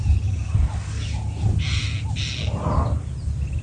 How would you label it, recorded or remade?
recorded